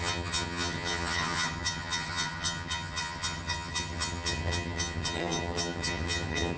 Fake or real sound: fake